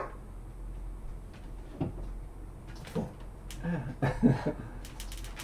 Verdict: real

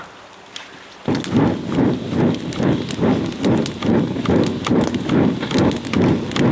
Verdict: real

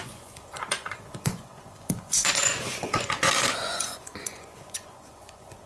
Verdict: fake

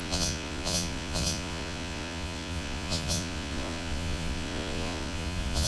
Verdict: fake